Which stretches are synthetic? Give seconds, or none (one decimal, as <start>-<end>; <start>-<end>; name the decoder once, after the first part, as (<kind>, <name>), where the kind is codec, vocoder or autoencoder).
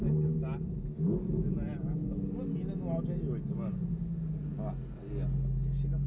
none